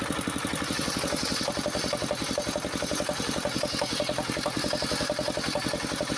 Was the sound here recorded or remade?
recorded